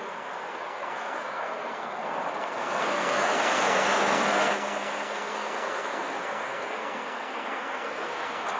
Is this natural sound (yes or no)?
no